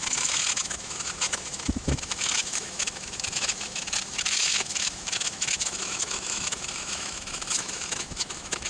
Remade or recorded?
remade